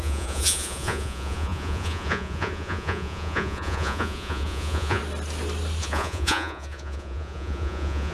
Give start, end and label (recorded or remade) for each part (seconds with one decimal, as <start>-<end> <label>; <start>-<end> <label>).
0.0-5.0 remade; 5.0-5.8 recorded; 5.8-8.1 remade